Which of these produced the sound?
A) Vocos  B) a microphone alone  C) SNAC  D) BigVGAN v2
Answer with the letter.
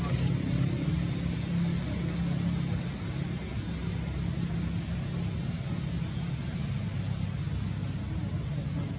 B